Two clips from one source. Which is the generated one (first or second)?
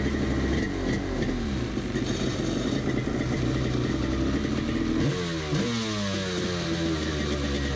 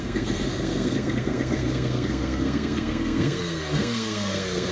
second